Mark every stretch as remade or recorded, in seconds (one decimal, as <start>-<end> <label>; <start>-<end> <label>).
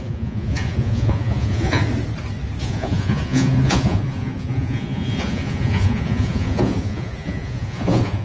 0.0-1.8 remade; 1.8-2.6 recorded; 2.6-8.2 remade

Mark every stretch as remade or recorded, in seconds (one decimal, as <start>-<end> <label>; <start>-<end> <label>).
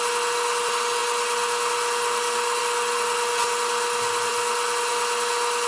0.0-5.7 recorded